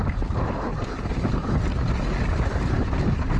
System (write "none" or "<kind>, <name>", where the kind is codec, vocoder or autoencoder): none